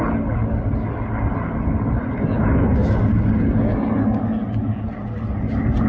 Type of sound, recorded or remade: recorded